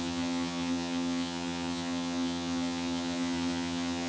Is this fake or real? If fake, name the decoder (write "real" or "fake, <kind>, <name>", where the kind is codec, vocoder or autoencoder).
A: fake, vocoder, HiFi-GAN